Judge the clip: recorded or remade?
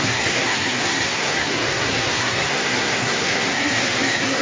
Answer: remade